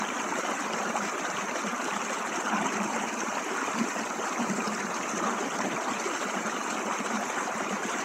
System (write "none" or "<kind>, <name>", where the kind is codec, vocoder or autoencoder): vocoder, BigVGAN v2